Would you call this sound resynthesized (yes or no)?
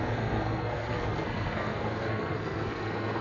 yes